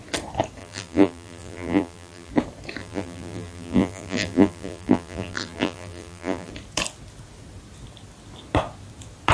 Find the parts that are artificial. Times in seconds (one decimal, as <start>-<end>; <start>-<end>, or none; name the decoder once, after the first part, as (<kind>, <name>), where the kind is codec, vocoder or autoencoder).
0.6-2.3 (vocoder, BigVGAN v2); 2.8-6.5